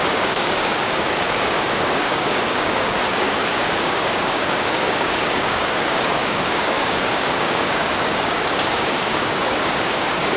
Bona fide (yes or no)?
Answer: no